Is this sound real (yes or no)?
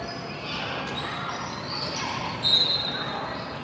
yes